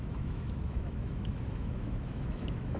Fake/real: fake